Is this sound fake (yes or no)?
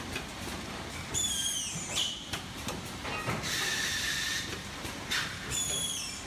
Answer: yes